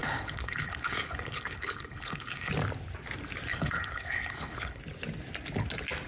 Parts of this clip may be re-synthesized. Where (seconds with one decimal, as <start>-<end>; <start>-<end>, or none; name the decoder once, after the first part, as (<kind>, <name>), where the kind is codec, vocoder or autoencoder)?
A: 0.0-2.5 (codec, HILCodec); 3.5-4.8